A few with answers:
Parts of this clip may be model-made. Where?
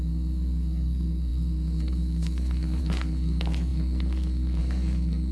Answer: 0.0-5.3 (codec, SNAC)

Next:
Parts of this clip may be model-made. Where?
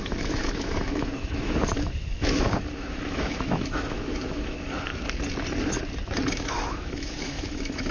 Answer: 0.0-4.9 (autoencoder, DAC-VAE); 6.3-7.9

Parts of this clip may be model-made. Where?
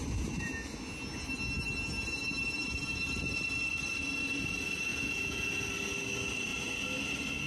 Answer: 4.9-5.5 (vocoder, Vocos)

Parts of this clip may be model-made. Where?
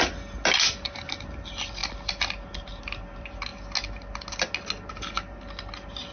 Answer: none